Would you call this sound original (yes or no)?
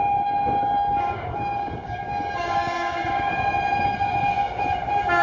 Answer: no